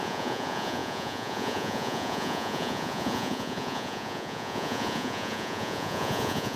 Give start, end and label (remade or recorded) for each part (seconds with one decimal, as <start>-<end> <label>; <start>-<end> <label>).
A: 0.0-6.6 remade